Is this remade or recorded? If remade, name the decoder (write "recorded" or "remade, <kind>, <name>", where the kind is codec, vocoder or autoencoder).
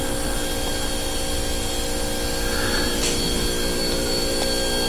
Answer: recorded